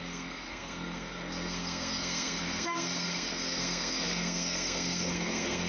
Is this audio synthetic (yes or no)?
yes